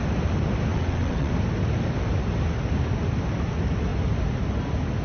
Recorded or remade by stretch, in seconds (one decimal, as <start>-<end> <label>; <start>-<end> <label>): 0.0-0.7 recorded; 0.7-1.3 remade; 1.3-5.0 recorded